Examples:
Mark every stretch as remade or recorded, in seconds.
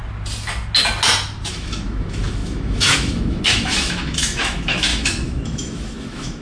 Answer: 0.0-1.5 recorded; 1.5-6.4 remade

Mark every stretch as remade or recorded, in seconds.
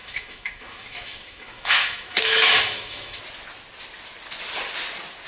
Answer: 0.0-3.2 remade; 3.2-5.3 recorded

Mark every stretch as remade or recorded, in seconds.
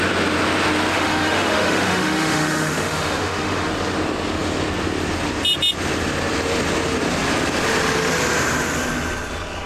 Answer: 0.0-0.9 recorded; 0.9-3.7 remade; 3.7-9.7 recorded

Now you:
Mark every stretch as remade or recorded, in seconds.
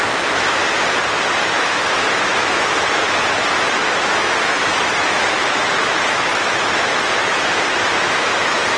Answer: 0.0-0.6 remade; 0.6-1.4 recorded; 1.4-8.8 remade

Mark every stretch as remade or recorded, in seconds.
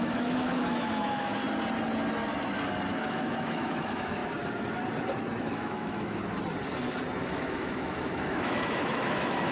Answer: 0.0-1.4 remade; 1.4-2.9 recorded; 2.9-4.2 remade; 4.2-5.4 recorded; 5.4-6.2 remade; 6.2-7.2 recorded; 7.2-9.5 remade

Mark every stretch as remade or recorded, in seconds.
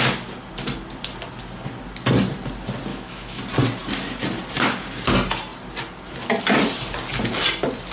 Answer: 0.0-2.9 recorded; 2.9-3.4 remade; 3.4-7.9 recorded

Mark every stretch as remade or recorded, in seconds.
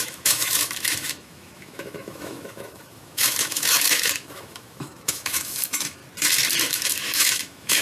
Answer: 0.0-6.0 remade; 6.0-6.6 recorded; 6.6-7.8 remade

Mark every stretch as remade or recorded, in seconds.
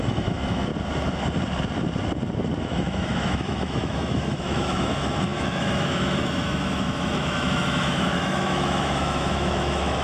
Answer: 0.0-0.7 remade; 0.7-2.6 recorded; 2.6-10.0 remade